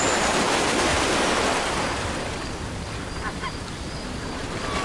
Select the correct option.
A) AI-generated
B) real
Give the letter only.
B